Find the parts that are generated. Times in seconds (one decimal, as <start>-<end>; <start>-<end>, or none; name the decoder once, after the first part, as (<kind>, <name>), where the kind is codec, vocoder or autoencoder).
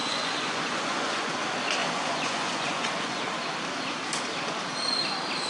0.0-1.3 (vocoder, Vocos); 1.8-3.2